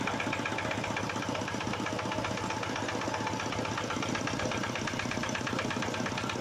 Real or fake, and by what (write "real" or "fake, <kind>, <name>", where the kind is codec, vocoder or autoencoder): real